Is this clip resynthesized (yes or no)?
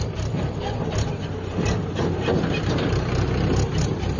no